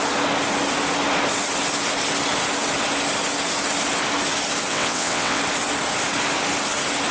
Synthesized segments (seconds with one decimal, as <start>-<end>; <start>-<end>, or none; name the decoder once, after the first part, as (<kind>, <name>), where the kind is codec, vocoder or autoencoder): 4.7-5.4 (vocoder, WaveNeXt)